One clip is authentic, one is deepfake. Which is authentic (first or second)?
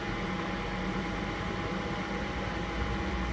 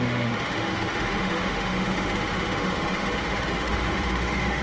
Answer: first